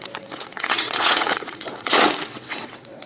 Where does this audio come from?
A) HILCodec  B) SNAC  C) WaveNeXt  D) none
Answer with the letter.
C